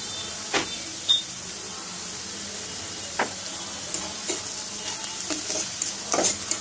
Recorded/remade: recorded